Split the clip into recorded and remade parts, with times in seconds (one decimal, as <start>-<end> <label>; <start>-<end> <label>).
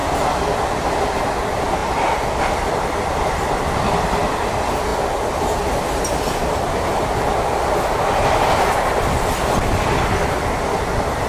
0.0-11.3 recorded